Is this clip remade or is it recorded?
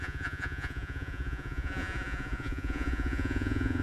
remade